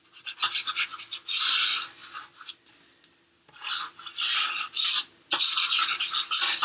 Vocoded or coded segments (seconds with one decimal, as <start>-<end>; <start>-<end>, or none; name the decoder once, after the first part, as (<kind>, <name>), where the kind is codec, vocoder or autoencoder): none